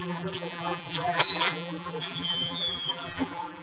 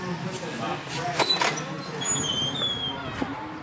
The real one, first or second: second